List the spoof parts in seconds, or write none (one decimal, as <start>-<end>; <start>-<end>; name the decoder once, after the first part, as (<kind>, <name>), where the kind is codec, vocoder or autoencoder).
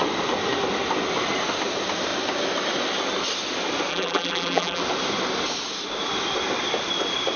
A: 3.9-4.8 (vocoder, BigVGAN v2)